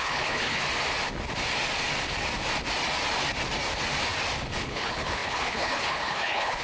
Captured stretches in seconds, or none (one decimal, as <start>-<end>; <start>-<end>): 0.6-4.6